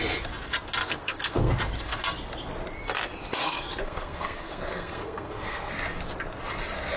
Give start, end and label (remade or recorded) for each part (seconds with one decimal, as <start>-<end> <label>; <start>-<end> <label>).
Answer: 0.0-0.8 recorded; 0.8-1.5 remade; 1.5-3.4 recorded; 3.4-5.7 remade; 5.7-7.0 recorded

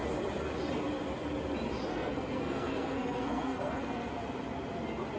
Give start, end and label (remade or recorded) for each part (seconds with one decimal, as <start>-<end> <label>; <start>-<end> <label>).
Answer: 0.0-1.9 recorded; 1.9-4.1 remade; 4.1-5.2 recorded

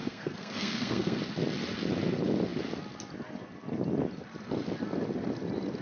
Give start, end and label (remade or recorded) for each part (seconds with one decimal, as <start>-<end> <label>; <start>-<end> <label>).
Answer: 0.0-1.2 remade; 1.2-5.8 recorded

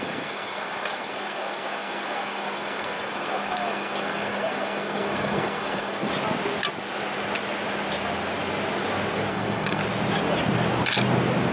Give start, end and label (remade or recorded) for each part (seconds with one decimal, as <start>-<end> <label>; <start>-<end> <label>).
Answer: 0.0-6.1 remade; 6.1-9.3 recorded; 9.3-9.8 remade; 9.8-11.5 recorded

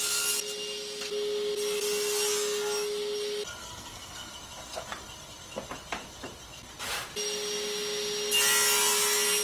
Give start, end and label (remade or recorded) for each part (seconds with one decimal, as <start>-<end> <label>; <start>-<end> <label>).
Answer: 0.0-3.6 recorded; 3.6-4.3 remade; 4.3-9.4 recorded

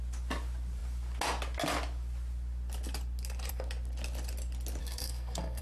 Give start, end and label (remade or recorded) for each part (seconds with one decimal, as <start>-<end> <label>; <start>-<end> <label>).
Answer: 0.0-4.8 recorded; 4.8-5.6 remade

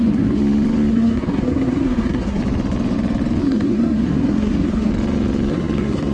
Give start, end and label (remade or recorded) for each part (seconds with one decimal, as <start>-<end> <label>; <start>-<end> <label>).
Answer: 0.0-0.4 remade; 0.4-0.9 recorded; 0.9-2.4 remade; 2.4-3.4 recorded; 3.4-4.9 remade; 4.9-5.5 recorded; 5.5-6.1 remade

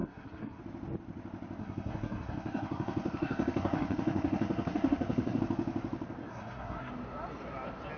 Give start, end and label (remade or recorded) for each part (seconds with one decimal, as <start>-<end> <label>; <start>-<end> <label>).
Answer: 0.0-0.6 remade; 0.6-1.6 recorded; 1.6-5.4 remade; 5.4-6.3 recorded; 6.3-6.9 remade; 6.9-8.0 recorded